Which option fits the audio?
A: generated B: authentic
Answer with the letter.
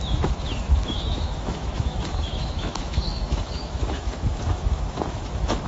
A